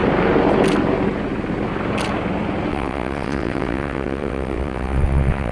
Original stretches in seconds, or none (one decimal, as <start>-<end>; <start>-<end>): 0.0-2.7